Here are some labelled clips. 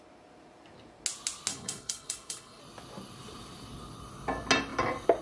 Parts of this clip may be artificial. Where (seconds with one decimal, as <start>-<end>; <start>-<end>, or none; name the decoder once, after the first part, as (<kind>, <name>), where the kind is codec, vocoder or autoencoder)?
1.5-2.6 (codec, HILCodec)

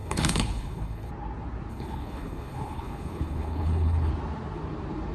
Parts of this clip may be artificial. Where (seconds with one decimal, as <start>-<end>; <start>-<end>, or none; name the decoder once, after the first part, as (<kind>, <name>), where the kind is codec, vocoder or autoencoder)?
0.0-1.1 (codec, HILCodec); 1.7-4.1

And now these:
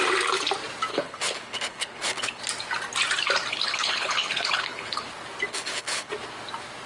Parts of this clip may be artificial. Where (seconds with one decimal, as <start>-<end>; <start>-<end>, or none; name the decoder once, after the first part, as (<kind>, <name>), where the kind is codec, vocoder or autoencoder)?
0.9-2.4 (codec, HILCodec); 3.5-5.1; 5.5-6.1